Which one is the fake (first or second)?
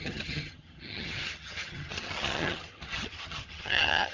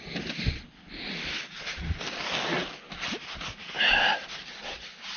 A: first